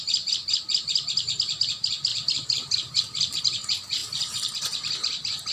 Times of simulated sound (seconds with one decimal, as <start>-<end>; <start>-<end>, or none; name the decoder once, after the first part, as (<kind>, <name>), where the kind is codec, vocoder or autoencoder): 2.1-3.4 (vocoder, BigVGAN v2); 4.0-4.6